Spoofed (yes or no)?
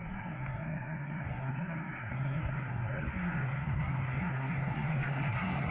yes